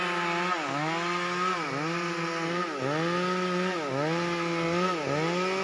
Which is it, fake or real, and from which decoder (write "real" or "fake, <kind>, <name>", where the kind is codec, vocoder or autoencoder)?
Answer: real